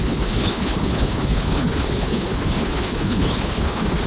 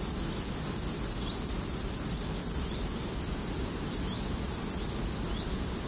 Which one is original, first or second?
second